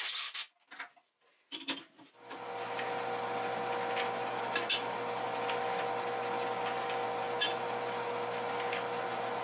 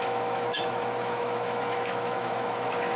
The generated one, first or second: second